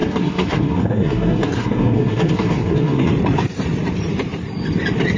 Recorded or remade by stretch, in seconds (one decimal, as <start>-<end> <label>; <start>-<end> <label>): 0.0-3.1 remade; 3.1-5.2 recorded